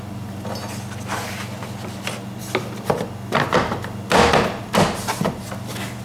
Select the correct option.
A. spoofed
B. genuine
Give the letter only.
B